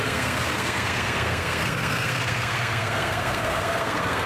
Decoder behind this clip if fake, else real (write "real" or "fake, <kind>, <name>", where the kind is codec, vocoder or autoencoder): fake, codec, SNAC